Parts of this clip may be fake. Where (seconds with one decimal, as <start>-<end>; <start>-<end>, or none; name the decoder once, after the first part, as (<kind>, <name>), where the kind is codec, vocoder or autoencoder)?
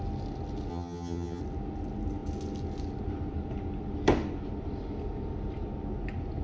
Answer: 0.7-1.4 (vocoder, HiFi-GAN)